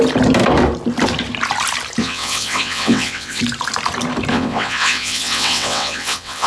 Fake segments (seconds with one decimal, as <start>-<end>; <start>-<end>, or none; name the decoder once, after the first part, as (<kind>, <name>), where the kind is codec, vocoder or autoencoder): 2.0-3.4 (vocoder, WaveNeXt); 4.3-6.5